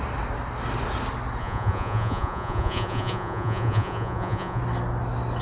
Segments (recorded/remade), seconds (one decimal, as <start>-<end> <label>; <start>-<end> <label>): 0.0-1.4 recorded; 1.4-4.6 remade; 4.6-5.4 recorded